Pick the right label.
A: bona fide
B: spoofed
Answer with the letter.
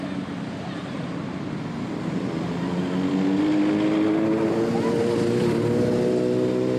A